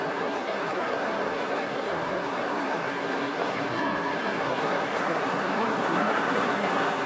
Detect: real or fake fake